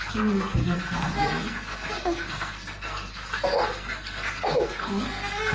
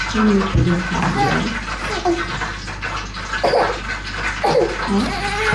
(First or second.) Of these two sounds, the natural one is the second